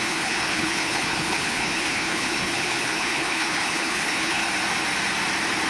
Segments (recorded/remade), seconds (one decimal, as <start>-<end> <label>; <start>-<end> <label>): 0.0-4.4 remade; 4.4-5.7 recorded